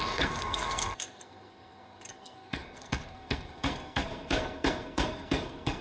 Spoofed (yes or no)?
yes